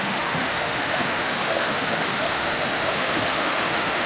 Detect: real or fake fake